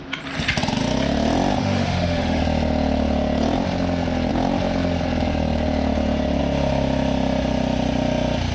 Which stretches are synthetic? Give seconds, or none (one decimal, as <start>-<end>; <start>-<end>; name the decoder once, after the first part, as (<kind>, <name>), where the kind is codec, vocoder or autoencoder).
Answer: 1.6-2.4 (autoencoder, DAC-VAE)